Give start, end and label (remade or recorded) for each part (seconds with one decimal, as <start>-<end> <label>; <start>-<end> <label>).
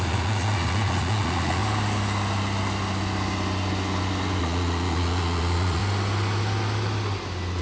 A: 0.0-1.6 remade; 1.6-4.4 recorded; 4.4-5.8 remade; 5.8-7.6 recorded